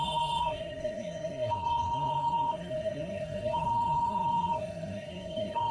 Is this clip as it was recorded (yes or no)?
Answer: no